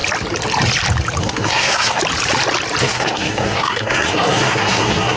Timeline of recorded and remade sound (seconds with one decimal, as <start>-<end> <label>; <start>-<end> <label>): 0.0-1.2 recorded; 1.2-2.0 remade; 2.0-2.8 recorded; 2.8-5.2 remade